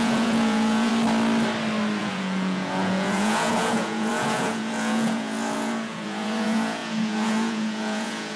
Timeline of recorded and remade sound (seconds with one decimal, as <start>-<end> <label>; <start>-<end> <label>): 0.0-0.9 remade; 0.9-2.0 recorded; 2.0-8.4 remade